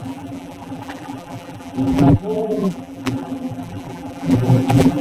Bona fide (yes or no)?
no